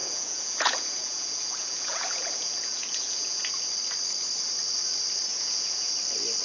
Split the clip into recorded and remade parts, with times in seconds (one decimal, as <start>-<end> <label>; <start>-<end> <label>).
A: 0.0-3.5 remade; 3.5-5.3 recorded; 5.3-5.9 remade; 5.9-6.4 recorded